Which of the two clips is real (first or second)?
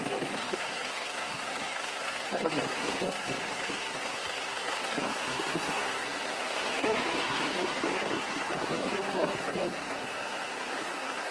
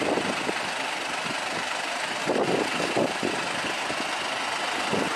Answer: second